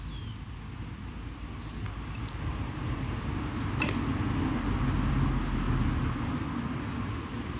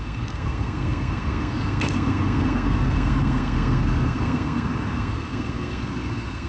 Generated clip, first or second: second